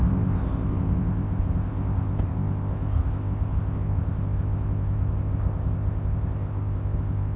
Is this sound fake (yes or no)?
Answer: yes